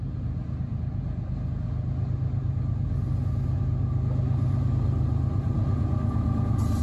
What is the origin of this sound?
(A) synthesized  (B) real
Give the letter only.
B